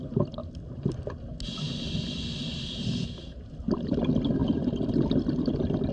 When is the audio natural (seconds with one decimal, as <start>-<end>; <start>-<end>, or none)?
0.0-5.9